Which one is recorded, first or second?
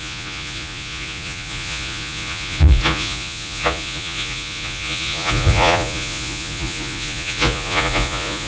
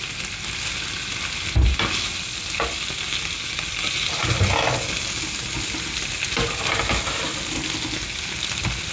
second